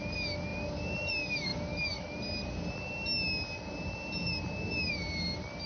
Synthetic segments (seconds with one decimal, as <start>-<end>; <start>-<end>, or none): none